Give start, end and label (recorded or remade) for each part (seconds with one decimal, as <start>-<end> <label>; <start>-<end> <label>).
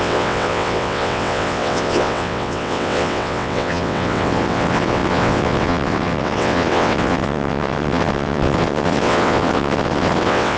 0.0-10.6 remade